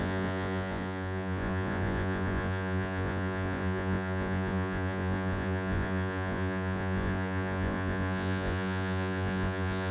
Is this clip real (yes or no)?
no